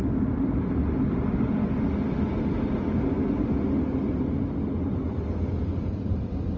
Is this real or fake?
real